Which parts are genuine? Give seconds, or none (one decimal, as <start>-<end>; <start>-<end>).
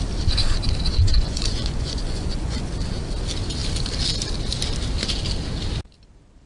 0.0-1.0; 2.7-6.5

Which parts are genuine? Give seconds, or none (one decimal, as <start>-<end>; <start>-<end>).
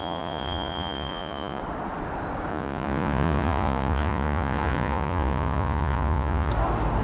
1.6-2.5; 6.5-7.0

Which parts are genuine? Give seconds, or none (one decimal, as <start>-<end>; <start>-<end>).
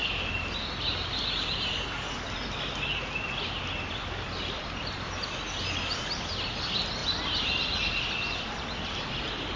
0.0-9.6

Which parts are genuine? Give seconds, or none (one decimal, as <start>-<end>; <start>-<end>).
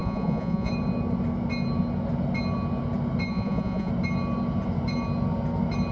0.7-3.3; 3.9-5.9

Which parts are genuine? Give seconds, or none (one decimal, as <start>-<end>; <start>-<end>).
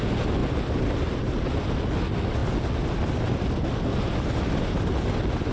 0.0-5.5